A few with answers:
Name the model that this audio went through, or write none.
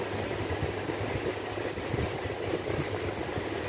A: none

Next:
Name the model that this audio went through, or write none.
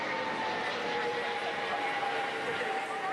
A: none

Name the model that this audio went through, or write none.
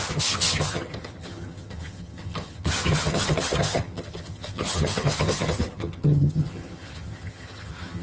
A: vocoder, HiFi-GAN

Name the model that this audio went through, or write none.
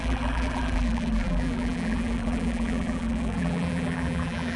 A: vocoder, BigVGAN v2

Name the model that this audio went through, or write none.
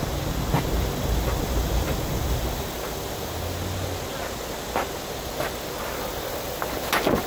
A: none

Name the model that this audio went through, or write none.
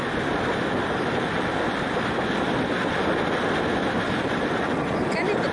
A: none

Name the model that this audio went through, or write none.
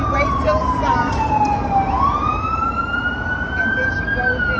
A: none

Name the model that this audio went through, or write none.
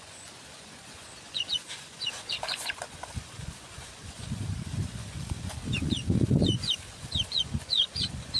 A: vocoder, Vocos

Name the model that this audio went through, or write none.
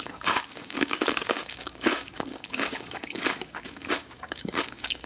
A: codec, DAC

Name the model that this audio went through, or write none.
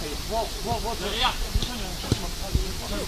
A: none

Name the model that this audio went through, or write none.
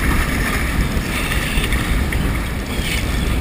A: vocoder, BigVGAN v2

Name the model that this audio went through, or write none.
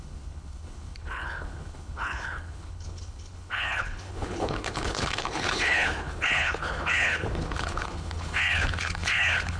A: codec, HILCodec